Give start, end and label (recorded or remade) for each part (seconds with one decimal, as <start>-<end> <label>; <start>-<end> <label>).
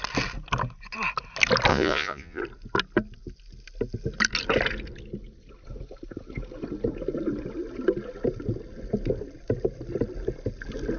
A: 0.0-1.7 recorded; 1.7-2.4 remade; 2.4-11.0 recorded